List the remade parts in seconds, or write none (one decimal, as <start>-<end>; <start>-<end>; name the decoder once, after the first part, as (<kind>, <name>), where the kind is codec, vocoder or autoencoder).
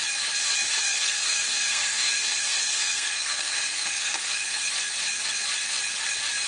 0.9-4.7 (codec, SNAC)